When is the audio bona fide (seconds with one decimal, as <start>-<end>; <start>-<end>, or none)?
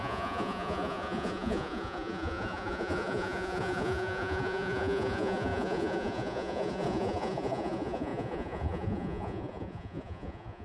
none